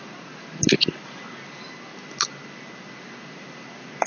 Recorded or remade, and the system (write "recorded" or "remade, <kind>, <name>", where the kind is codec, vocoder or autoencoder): recorded